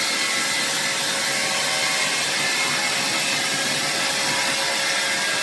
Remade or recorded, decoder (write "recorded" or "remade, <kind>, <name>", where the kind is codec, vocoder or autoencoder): recorded